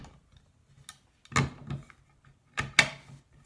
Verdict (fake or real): real